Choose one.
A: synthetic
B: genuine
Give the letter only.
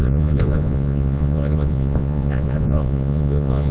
A